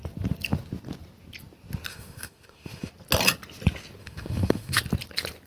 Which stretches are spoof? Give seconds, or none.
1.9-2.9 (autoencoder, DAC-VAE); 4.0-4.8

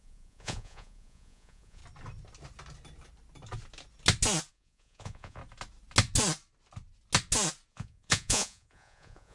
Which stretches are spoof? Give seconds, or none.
0.0-1.8 (vocoder, Vocos); 4.5-5.4; 7.7-9.3

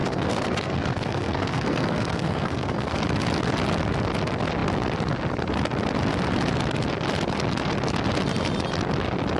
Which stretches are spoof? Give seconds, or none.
0.0-3.0 (codec, SNAC)

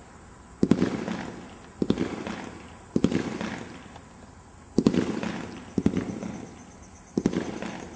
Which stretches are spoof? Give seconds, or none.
none

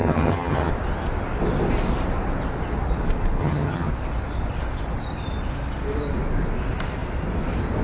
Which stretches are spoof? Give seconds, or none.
0.0-0.7 (vocoder, HiFi-GAN); 3.4-3.9